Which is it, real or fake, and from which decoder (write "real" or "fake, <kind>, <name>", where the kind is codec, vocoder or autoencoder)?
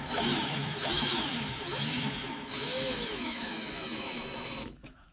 fake, autoencoder, DAC-VAE